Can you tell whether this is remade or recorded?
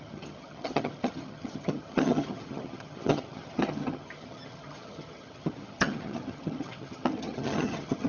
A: remade